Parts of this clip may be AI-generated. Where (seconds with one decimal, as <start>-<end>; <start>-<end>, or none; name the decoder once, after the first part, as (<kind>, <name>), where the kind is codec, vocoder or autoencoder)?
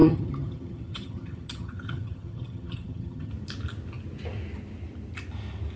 0.0-3.3 (vocoder, HiFi-GAN)